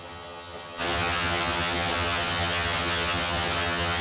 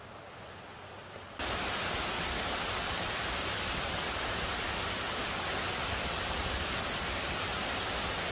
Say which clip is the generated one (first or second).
first